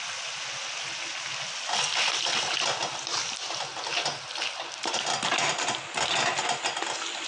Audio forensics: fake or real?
real